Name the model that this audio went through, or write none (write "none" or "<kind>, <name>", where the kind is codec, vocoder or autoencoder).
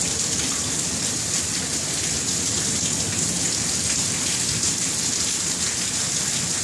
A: none